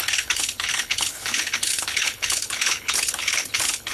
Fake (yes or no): yes